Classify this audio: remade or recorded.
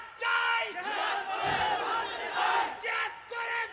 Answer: recorded